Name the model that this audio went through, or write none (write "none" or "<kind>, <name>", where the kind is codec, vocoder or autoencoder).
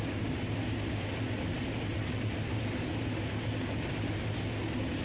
none